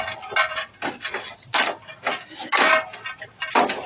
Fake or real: real